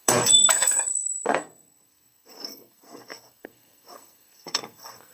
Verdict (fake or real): fake